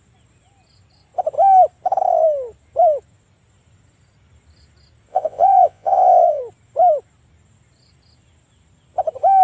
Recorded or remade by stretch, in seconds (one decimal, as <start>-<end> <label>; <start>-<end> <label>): 0.0-5.1 recorded; 5.1-6.4 remade; 6.4-9.4 recorded